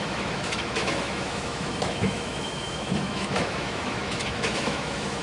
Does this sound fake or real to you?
fake